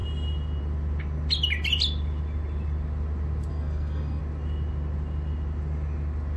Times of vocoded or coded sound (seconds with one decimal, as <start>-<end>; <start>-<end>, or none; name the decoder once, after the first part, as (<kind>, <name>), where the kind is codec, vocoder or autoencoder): 3.5-4.2 (codec, SNAC)